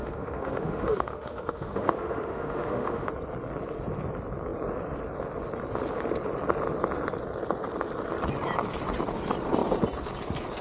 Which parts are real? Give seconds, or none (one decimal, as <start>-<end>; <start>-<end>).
3.1-10.6